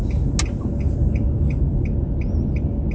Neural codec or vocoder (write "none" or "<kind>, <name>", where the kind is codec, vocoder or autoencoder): none